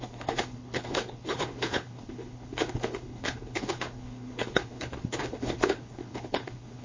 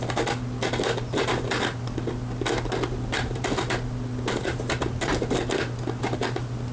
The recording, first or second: second